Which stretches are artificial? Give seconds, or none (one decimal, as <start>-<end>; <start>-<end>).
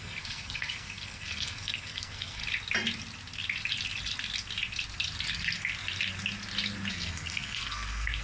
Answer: 0.0-2.4; 6.9-8.2